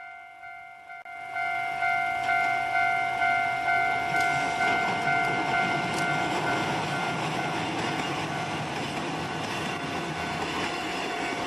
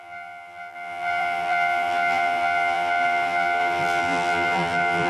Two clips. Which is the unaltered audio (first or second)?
first